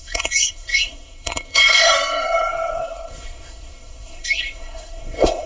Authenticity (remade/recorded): remade